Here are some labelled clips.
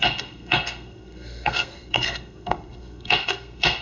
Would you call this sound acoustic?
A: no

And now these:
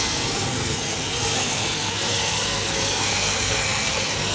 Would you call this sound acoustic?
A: no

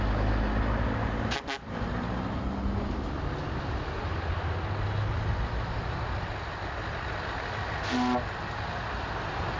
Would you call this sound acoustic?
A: yes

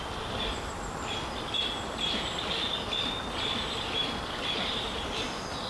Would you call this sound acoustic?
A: yes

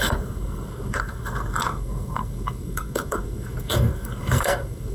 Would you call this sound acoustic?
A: no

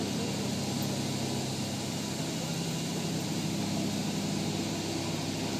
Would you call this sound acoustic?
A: yes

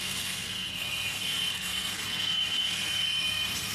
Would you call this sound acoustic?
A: no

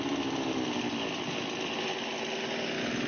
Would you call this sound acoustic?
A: yes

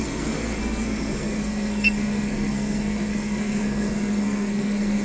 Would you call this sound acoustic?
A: no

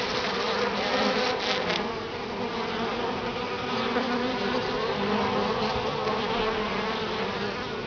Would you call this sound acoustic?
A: yes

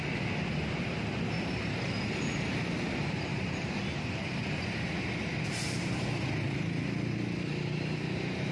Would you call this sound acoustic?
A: yes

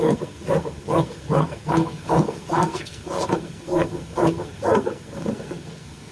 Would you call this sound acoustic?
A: no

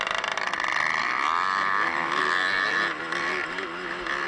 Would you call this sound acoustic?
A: yes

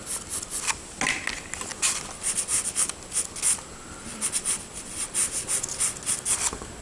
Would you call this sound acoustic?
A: yes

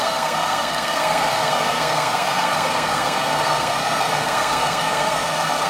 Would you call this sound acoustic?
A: no